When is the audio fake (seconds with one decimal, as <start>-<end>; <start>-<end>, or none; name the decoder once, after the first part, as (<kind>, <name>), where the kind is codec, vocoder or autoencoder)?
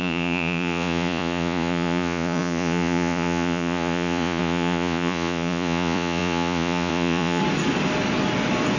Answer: 0.0-7.4 (vocoder, Vocos)